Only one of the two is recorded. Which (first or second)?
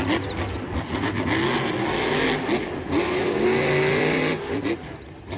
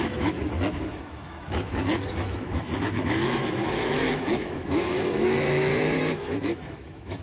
first